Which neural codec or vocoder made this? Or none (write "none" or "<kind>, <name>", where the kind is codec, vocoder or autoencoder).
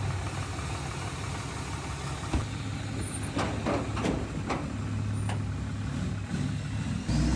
none